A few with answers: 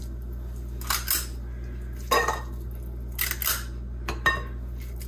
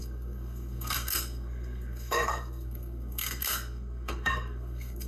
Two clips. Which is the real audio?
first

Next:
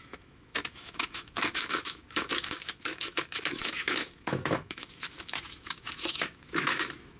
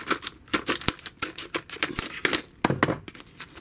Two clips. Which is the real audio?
second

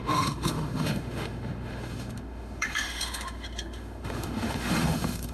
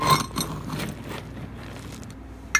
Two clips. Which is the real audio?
second